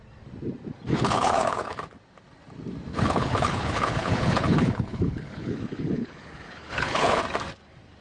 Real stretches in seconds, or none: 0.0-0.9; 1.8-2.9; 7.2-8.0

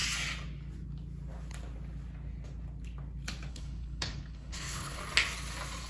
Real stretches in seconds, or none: 0.0-3.5; 5.0-5.9

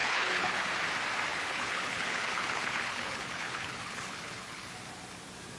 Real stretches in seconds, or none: 0.7-1.3; 4.7-5.6